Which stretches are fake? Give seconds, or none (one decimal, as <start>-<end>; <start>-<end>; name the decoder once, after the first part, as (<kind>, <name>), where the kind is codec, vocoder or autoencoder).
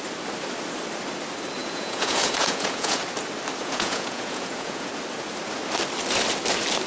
1.6-3.0 (vocoder, Vocos); 3.6-4.9